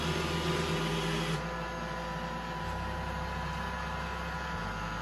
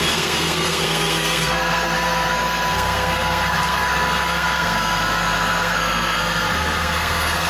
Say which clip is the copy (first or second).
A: second